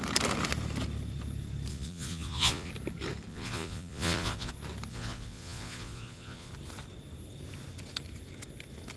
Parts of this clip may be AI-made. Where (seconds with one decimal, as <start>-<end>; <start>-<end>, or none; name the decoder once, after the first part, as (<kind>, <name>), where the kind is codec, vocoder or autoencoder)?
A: 1.7-2.7 (vocoder, Vocos); 3.3-4.5; 4.9-6.5